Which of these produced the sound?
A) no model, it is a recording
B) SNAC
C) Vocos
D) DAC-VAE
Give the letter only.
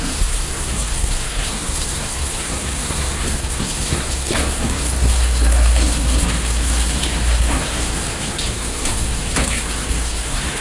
B